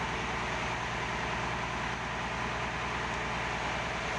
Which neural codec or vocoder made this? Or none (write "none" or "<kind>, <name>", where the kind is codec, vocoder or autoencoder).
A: none